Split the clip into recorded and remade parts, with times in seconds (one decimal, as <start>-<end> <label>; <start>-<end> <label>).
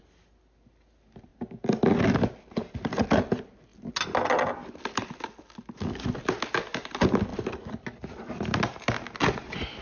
0.0-9.8 recorded